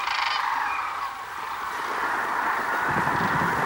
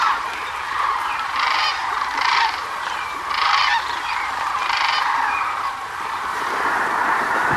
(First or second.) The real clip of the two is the first